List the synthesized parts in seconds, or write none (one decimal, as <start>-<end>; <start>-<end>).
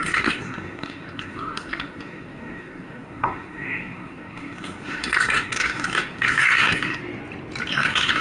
0.0-7.0; 7.7-8.2